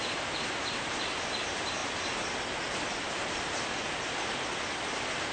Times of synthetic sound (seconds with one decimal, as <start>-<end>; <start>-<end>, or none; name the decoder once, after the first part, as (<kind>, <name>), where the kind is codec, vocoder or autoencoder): 0.0-1.8 (vocoder, BigVGAN v2)